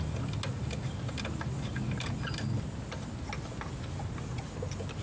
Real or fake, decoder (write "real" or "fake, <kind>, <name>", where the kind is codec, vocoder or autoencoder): real